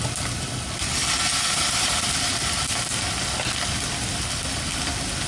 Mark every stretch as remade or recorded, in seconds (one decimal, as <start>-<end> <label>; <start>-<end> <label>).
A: 0.0-5.3 recorded